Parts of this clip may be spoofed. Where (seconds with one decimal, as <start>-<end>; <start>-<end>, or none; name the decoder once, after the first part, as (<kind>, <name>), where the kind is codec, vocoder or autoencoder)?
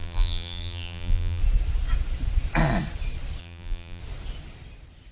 0.0-1.4 (vocoder, BigVGAN v2); 3.4-4.0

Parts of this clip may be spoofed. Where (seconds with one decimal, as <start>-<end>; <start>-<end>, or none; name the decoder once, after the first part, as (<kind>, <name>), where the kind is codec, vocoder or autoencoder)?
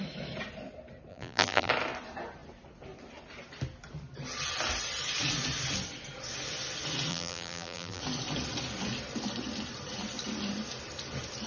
1.1-1.7 (vocoder, BigVGAN v2); 7.1-8.0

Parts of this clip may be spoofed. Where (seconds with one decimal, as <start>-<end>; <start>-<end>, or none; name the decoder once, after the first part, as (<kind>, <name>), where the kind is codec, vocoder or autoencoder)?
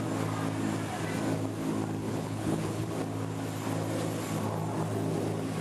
2.0-2.9 (codec, HILCodec)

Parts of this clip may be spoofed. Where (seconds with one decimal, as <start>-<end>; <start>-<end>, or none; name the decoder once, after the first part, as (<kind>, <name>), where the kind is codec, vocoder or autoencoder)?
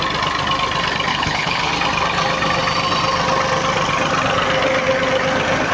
1.1-1.7 (codec, HILCodec)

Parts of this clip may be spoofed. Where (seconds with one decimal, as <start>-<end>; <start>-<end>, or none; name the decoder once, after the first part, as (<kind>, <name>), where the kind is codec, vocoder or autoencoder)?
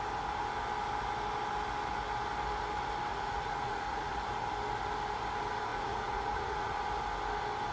3.1-4.2 (vocoder, Vocos); 5.7-6.8